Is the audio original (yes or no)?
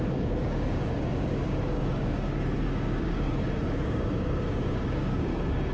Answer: no